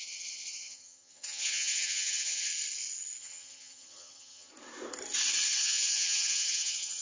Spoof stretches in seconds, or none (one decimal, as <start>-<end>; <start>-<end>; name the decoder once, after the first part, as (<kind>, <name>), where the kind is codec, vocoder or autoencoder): 0.0-2.5 (vocoder, HiFi-GAN); 3.2-4.5; 5.6-7.0